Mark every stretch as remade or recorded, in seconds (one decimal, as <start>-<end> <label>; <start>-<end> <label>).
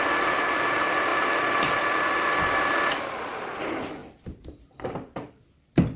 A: 0.0-6.0 recorded